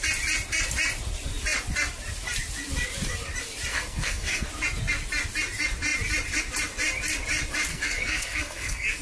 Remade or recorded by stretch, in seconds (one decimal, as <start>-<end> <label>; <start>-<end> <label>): 0.0-3.7 recorded; 3.7-4.5 remade; 4.5-7.7 recorded; 7.7-9.0 remade